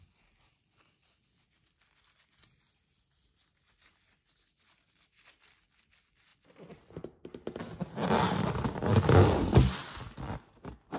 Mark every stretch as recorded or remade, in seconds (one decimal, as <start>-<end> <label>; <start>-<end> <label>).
0.0-6.3 recorded; 6.3-7.6 remade; 7.6-11.0 recorded